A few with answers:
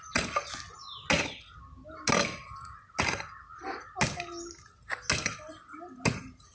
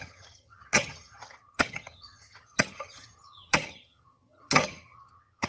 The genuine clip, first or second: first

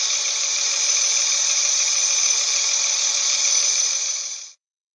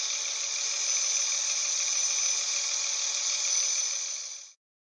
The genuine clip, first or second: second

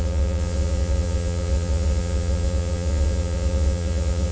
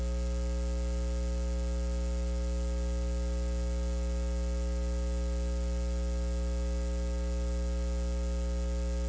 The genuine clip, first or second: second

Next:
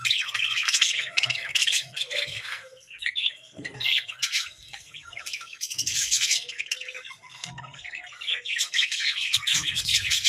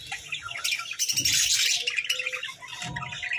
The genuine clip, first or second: second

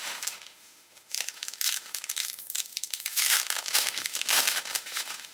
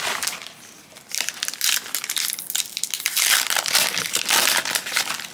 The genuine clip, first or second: second